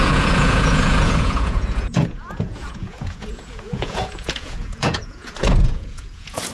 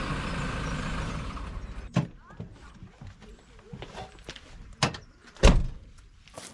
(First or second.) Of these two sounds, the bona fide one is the second